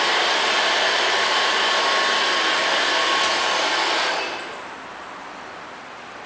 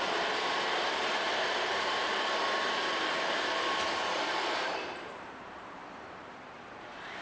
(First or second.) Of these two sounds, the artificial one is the second